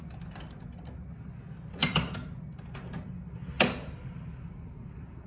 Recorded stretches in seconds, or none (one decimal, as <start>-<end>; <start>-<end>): 0.0-5.3